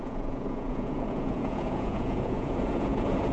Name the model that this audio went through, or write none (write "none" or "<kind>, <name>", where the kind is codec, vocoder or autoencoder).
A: vocoder, Vocos